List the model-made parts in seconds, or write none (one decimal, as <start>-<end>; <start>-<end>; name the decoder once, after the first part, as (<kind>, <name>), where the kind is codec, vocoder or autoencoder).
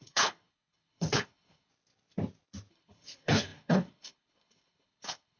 0.0-1.7 (codec, HILCodec); 2.7-5.4